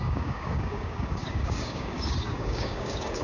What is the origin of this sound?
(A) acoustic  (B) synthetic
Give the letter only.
B